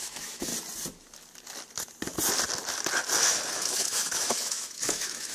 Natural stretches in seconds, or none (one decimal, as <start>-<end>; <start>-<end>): 0.5-3.5